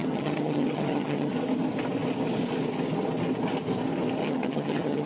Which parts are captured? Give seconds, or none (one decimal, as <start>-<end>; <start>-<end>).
1.3-4.2